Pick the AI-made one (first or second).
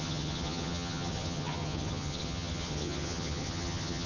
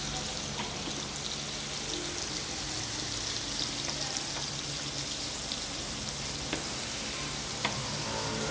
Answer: first